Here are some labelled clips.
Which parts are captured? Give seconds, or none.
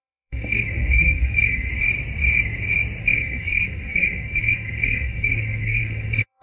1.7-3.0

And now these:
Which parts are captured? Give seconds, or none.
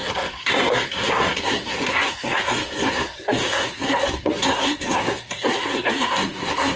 none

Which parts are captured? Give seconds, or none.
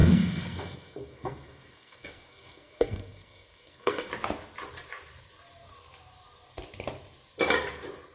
4.1-8.1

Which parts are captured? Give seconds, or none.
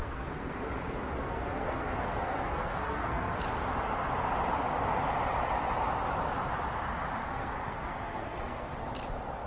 0.7-1.2; 3.4-7.2; 8.7-9.5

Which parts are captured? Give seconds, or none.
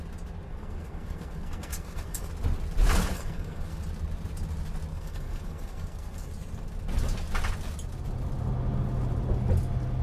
0.0-0.5; 2.3-3.1; 3.8-4.9; 6.3-10.0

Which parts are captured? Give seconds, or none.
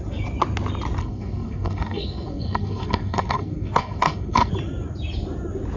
0.0-1.0; 4.5-5.8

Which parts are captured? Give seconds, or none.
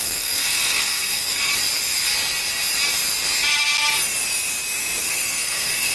1.5-5.0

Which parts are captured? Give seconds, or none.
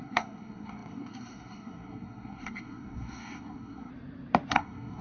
3.9-4.5